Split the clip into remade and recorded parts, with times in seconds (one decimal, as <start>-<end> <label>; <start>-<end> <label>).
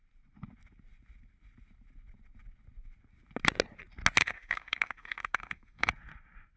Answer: 0.0-4.2 recorded; 4.2-5.9 remade; 5.9-6.6 recorded